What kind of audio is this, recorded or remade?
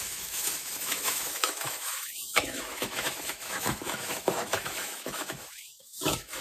remade